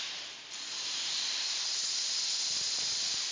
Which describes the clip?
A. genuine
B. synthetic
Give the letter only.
A